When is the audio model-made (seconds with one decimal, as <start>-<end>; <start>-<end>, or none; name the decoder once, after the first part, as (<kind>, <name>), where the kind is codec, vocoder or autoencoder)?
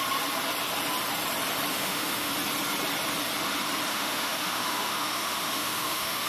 1.7-2.3 (autoencoder, DAC-VAE); 3.9-6.3